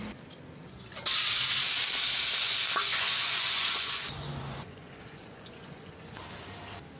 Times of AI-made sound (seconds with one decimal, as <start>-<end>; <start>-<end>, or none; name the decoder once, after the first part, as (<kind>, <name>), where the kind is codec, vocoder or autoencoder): 2.4-6.2 (vocoder, Vocos)